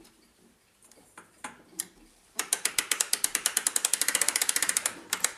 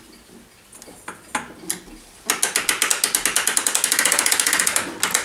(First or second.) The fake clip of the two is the first